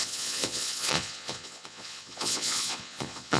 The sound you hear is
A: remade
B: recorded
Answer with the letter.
A